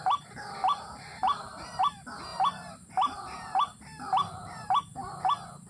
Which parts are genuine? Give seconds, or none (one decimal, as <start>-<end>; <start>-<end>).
0.0-1.1; 1.8-2.3; 5.2-5.7